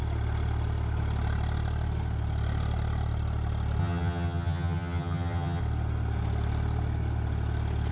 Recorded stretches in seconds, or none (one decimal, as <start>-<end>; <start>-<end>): 0.0-3.8; 5.6-7.9